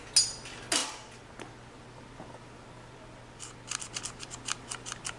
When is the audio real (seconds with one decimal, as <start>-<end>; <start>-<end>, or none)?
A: 0.0-5.2